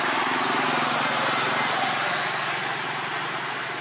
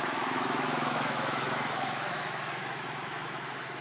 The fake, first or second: second